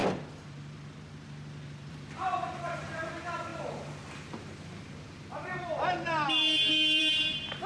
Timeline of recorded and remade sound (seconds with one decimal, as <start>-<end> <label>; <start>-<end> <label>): 0.0-1.9 recorded; 1.9-6.4 remade; 6.4-7.0 recorded; 7.0-7.7 remade